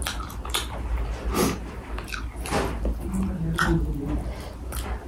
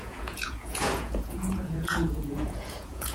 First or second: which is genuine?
first